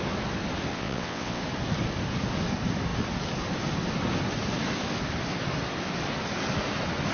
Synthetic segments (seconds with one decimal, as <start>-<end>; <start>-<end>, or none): 0.7-1.4